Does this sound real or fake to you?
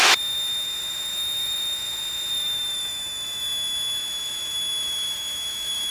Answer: fake